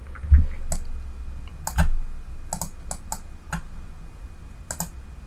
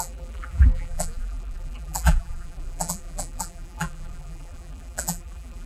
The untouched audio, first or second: first